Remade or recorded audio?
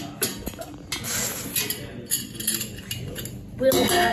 recorded